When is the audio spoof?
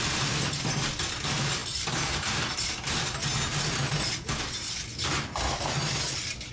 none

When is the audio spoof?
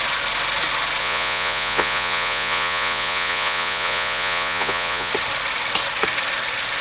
1.0-5.1 (vocoder, Vocos)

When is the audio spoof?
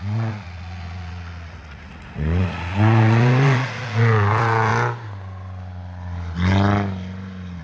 0.0-4.7 (vocoder, Vocos)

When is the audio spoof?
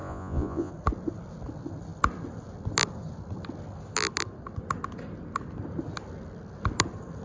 0.0-0.7 (vocoder, Vocos)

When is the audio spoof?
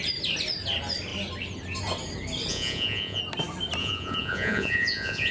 2.5-3.2 (vocoder, Vocos); 3.8-5.3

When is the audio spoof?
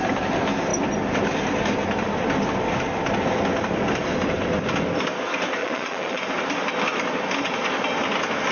5.6-6.2 (vocoder, Vocos)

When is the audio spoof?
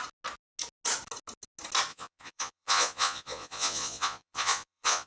1.9-5.1 (vocoder, Vocos)